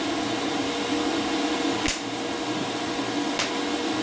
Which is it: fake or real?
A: real